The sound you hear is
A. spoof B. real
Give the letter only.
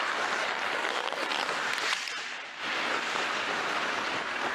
A